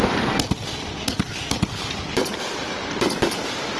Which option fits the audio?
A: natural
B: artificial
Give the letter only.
A